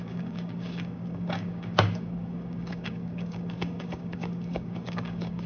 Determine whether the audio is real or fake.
fake